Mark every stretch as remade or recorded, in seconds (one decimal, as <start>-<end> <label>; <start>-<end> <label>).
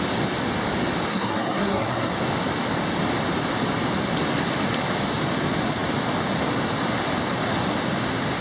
0.0-1.1 recorded; 1.1-2.1 remade; 2.1-8.4 recorded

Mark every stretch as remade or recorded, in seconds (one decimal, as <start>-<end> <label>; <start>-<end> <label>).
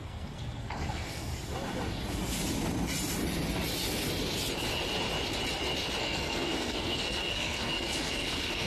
0.0-1.3 remade; 1.3-6.0 recorded; 6.0-8.7 remade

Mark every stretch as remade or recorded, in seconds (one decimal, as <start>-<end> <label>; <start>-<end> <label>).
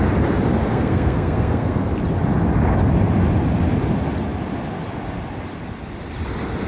0.0-0.7 recorded; 0.7-1.9 remade; 1.9-6.7 recorded